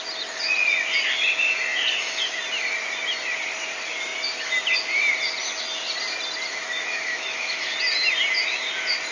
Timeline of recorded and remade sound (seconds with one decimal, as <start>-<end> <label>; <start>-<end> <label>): 0.0-6.5 recorded; 6.5-7.7 remade; 7.7-9.1 recorded